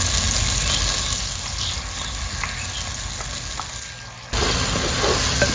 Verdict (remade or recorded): recorded